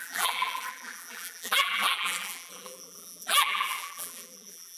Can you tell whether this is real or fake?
fake